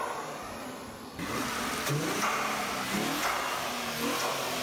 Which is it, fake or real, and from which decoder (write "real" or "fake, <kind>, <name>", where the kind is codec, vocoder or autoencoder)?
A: real